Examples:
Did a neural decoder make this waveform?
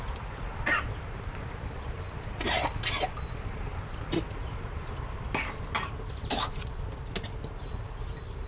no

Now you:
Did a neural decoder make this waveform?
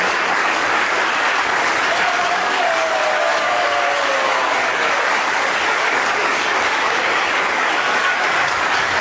yes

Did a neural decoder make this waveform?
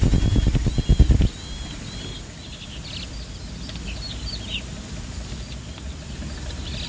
no